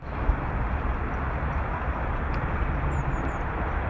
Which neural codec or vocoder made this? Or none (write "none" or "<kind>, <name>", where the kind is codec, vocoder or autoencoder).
none